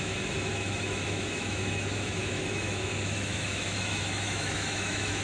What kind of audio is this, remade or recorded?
remade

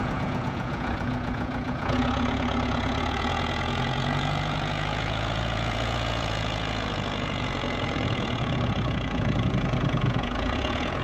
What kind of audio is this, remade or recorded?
remade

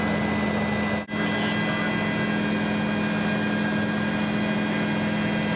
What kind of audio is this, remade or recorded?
recorded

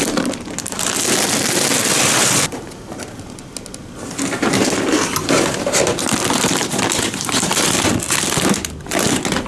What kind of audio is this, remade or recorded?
recorded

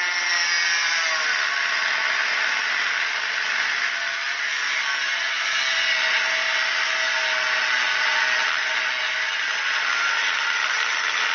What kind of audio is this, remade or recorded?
recorded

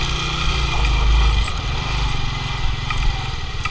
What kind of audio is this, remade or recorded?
recorded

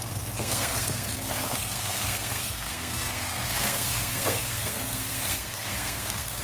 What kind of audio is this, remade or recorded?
remade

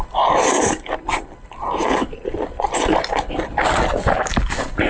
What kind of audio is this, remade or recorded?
recorded